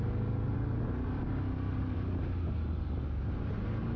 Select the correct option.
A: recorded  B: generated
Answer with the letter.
A